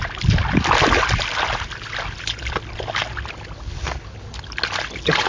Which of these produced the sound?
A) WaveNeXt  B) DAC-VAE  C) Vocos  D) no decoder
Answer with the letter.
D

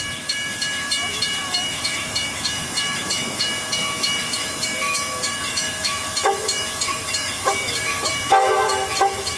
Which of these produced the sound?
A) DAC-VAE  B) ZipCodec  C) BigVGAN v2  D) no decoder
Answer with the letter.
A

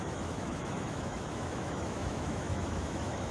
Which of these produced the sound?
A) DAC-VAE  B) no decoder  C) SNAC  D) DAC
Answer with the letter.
A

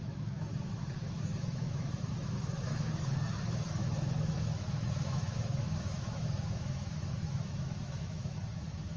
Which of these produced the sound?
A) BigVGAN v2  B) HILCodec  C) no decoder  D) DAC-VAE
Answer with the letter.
D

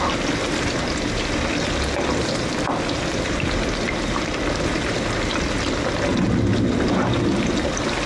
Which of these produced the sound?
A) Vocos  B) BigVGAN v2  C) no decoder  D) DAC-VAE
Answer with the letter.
C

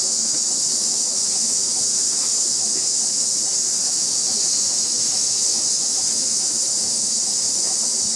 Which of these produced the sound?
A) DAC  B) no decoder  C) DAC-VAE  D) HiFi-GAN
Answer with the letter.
C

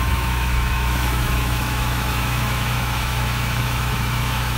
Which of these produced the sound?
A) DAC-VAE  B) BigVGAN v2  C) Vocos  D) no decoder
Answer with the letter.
A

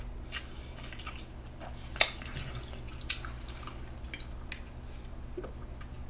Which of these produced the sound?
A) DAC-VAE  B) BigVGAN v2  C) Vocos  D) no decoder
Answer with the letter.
D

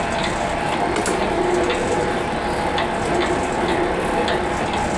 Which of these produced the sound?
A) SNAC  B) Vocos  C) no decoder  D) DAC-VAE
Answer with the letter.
C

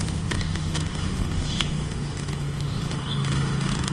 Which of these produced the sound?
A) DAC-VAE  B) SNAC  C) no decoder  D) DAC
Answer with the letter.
A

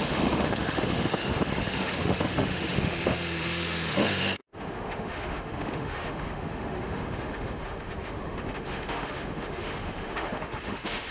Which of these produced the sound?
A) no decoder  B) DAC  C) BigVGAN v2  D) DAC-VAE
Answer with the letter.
D